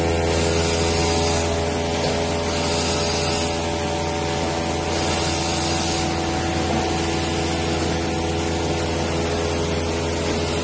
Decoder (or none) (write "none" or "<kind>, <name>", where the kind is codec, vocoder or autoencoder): none